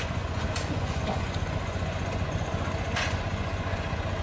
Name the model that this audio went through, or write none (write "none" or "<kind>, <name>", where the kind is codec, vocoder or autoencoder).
vocoder, Vocos